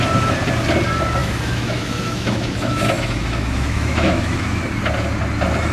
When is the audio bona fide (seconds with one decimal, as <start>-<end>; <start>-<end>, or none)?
0.0-1.2; 4.6-5.7